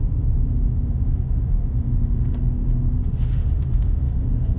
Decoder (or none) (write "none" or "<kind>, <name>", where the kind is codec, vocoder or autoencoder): autoencoder, DAC-VAE